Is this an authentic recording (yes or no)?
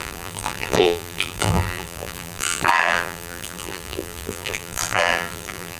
no